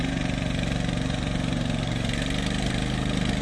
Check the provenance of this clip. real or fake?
fake